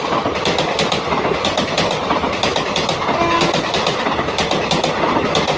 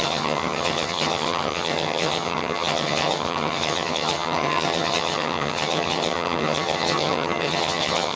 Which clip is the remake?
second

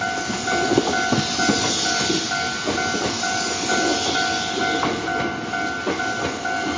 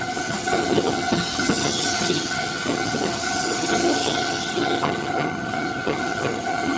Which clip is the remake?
second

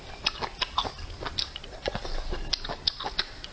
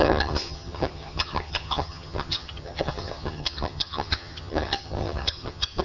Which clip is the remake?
second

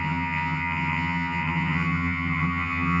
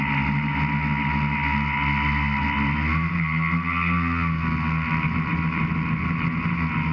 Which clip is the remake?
first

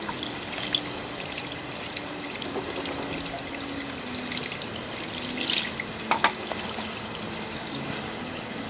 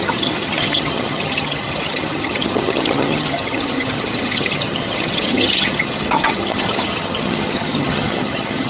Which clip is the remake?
second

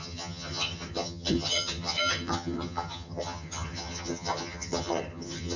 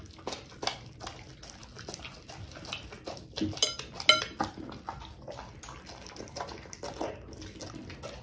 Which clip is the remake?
first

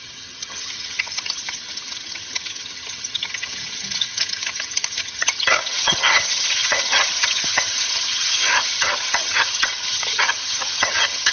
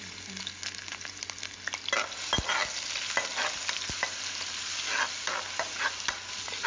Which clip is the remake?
first